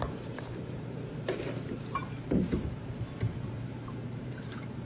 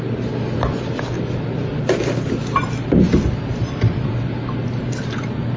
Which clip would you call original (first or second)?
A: second